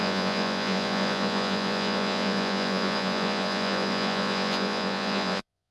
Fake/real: fake